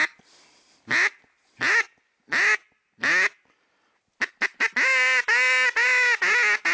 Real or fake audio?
real